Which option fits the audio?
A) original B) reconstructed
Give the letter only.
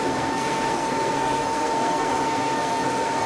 B